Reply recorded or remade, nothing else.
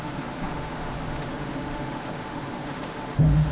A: remade